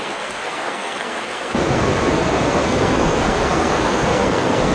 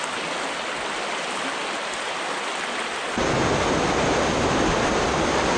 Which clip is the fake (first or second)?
first